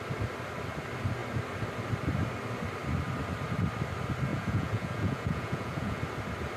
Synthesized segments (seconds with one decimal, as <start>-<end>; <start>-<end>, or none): 4.3-6.0